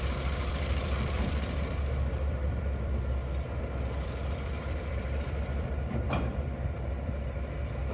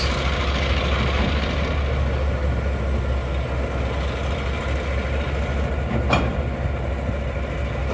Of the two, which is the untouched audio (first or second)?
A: second